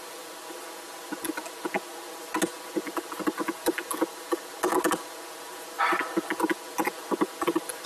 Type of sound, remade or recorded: recorded